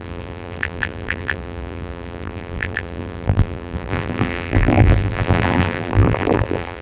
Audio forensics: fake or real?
fake